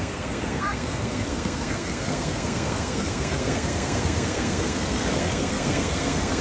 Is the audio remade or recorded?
remade